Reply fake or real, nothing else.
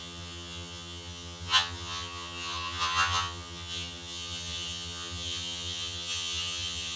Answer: fake